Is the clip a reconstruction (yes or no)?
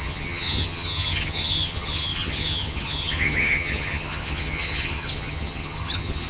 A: yes